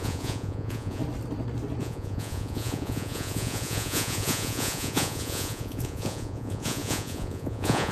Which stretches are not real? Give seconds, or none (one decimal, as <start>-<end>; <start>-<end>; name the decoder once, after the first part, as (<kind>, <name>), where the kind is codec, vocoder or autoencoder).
0.0-1.0 (vocoder, Vocos); 1.8-7.9